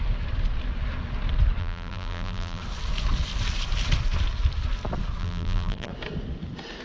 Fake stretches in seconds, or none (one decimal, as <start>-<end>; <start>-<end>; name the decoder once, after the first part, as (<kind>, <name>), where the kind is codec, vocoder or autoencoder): 1.6-2.6 (vocoder, BigVGAN v2); 5.2-5.9